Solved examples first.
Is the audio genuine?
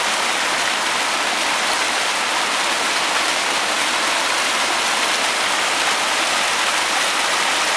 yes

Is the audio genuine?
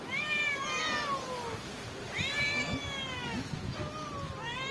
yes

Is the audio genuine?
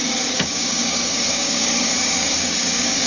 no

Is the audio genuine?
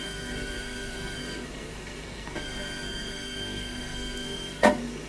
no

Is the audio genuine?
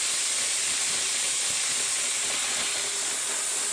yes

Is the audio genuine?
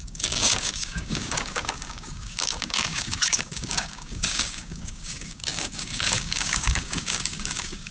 no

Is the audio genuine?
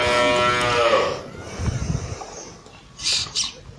yes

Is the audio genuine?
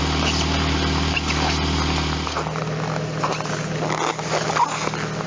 yes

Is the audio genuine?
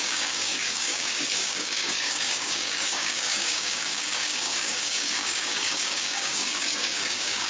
no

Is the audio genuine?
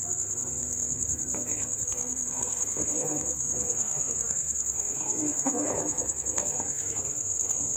no